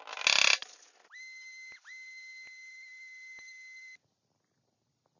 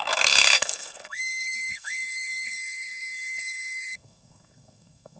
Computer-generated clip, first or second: second